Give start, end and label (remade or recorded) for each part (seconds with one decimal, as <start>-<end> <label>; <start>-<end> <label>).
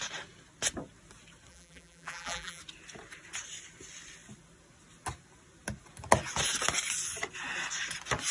0.0-1.5 recorded; 1.5-2.6 remade; 2.6-8.3 recorded